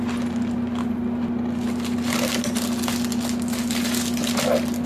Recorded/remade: recorded